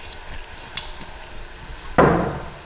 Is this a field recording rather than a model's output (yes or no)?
yes